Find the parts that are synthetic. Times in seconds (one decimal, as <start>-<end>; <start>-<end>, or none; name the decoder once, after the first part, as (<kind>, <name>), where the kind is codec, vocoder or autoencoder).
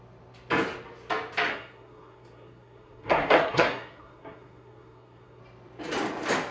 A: 1.5-5.4 (codec, SNAC)